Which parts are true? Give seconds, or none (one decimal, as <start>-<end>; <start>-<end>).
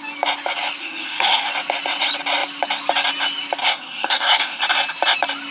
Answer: 0.0-0.8; 1.5-3.6; 4.6-5.5